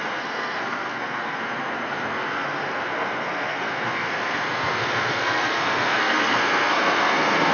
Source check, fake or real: fake